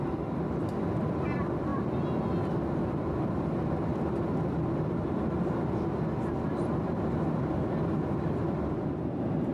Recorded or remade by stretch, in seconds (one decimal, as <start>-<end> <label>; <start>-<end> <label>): 0.0-1.7 remade; 1.7-3.3 recorded; 3.3-3.9 remade; 3.9-9.0 recorded; 9.0-9.5 remade